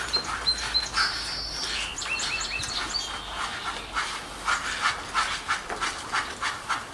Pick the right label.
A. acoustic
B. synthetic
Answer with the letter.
A